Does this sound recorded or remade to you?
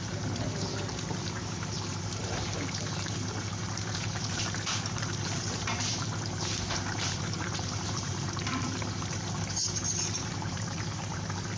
remade